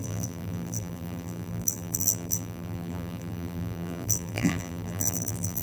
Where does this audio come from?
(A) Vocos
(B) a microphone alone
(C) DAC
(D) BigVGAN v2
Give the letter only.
D